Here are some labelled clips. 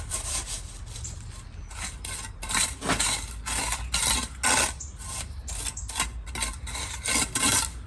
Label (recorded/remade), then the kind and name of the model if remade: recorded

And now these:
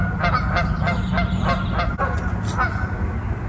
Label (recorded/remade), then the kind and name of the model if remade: recorded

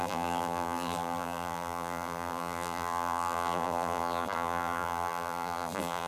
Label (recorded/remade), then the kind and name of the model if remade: remade, vocoder, BigVGAN v2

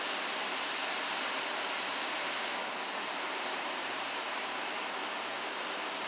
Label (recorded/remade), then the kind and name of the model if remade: recorded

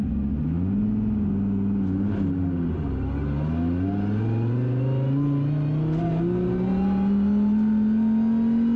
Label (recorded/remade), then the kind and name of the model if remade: recorded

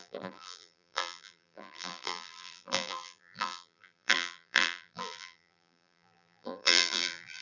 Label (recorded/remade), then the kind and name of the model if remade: remade, vocoder, BigVGAN v2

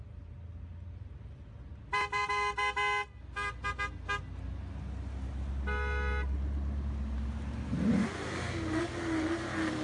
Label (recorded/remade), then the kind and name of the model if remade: recorded